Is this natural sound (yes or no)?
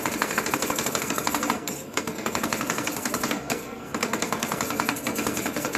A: no